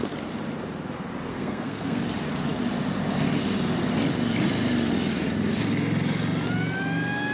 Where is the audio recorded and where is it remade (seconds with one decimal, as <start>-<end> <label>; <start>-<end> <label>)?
0.0-1.3 recorded; 1.3-2.0 remade; 2.0-7.3 recorded